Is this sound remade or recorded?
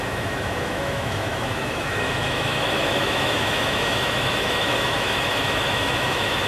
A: remade